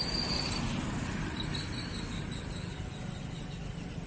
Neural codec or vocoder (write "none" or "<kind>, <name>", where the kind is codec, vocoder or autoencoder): none